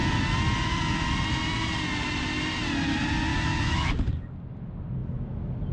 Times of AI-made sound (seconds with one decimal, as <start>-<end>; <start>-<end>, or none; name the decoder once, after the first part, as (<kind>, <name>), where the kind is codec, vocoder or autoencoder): 3.3-3.9 (autoencoder, DAC-VAE)